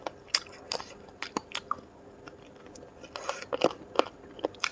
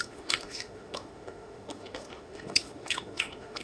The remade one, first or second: second